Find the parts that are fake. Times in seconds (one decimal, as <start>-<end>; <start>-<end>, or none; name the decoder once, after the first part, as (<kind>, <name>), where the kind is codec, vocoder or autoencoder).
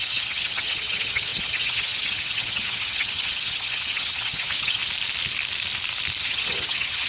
0.0-4.8 (vocoder, HiFi-GAN); 6.2-7.1